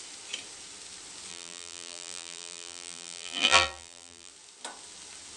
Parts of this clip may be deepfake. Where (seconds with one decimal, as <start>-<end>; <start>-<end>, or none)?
1.3-4.3